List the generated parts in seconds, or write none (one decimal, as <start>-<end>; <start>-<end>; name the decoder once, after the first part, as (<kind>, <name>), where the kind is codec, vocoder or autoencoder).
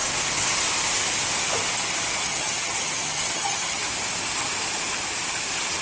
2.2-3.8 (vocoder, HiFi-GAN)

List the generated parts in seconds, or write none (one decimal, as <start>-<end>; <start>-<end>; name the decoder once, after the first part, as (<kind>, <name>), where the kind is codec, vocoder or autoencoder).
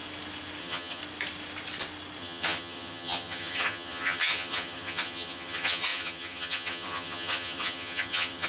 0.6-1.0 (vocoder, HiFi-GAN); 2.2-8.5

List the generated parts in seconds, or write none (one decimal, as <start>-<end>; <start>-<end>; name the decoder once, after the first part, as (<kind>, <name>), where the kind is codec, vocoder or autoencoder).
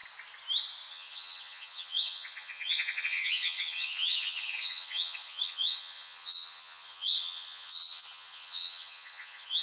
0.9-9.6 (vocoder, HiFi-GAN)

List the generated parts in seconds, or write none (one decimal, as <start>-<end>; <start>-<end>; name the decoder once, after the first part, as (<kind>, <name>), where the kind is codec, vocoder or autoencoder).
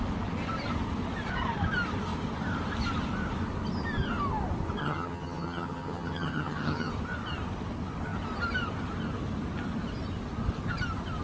4.8-6.9 (vocoder, HiFi-GAN)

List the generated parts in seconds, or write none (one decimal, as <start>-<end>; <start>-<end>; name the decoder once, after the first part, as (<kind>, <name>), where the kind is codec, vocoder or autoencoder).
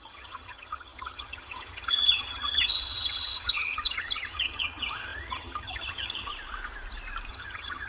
0.0-6.3 (vocoder, HiFi-GAN); 7.3-7.9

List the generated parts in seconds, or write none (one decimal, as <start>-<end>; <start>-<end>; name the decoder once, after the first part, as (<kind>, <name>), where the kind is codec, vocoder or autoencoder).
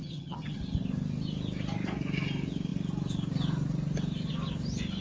0.0-0.6 (vocoder, HiFi-GAN)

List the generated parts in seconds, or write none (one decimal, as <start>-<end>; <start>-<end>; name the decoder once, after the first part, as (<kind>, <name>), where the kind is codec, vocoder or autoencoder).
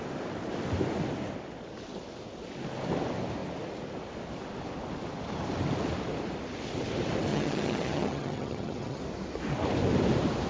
7.3-9.0 (vocoder, HiFi-GAN)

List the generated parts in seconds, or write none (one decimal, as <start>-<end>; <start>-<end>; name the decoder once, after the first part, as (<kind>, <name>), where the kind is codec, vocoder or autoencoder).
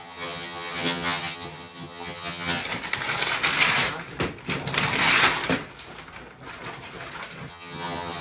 0.0-2.6 (vocoder, HiFi-GAN); 7.5-8.2